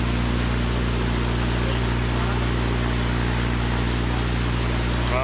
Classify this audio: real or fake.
real